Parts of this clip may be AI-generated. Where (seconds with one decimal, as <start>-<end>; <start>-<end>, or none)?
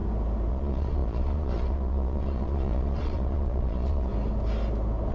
0.5-4.1